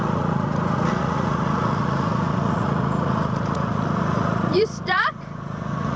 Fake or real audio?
fake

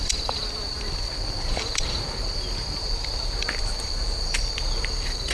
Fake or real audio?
fake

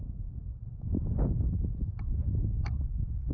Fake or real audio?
real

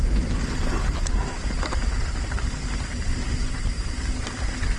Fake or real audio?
real